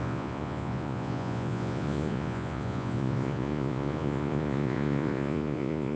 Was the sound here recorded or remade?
remade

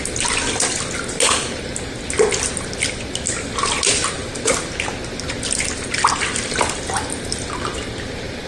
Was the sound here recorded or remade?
recorded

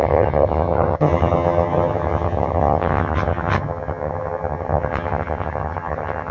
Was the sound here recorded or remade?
remade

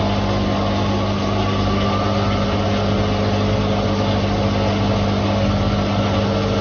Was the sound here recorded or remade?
recorded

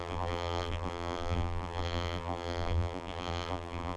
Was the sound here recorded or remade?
remade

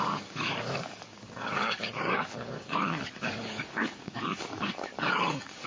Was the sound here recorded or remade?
remade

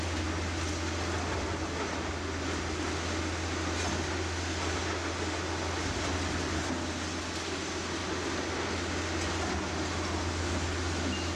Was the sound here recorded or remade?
recorded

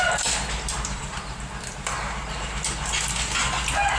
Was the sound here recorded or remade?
recorded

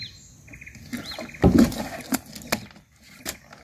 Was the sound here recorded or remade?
recorded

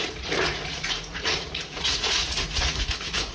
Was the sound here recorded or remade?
remade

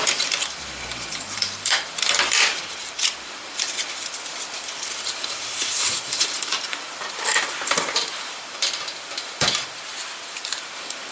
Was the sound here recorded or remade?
remade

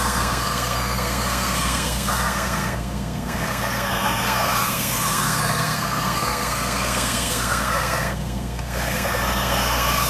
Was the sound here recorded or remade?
remade